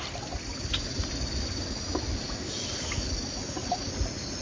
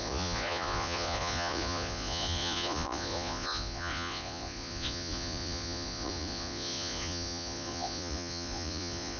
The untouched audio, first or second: first